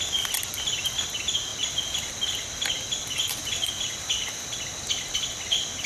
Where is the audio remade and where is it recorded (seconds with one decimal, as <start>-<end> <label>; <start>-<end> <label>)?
0.0-5.9 recorded